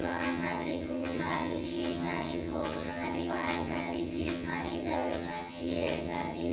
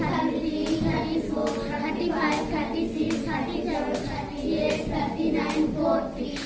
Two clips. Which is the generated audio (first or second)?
first